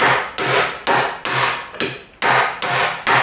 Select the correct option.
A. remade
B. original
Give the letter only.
B